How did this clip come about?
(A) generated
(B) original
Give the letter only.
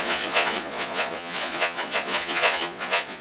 A